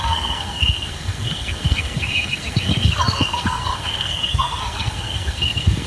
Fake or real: fake